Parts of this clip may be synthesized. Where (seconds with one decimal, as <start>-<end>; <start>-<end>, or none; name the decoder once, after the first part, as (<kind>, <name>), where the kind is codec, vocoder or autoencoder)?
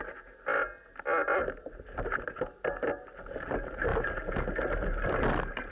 none